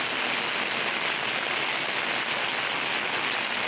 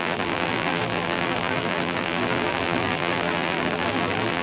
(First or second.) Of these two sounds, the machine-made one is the second